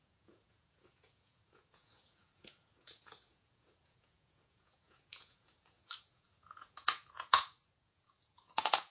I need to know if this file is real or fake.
fake